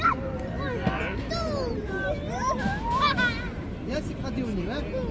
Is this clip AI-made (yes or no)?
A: no